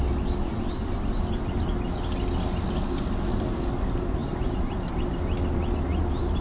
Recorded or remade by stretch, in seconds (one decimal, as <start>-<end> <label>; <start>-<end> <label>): 0.0-6.4 recorded